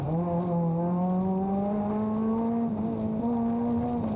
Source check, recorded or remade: recorded